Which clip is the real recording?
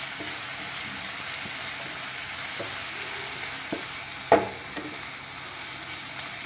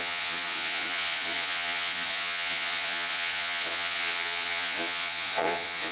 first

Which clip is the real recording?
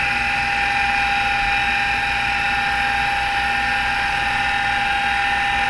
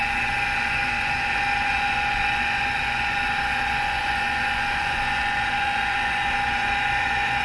first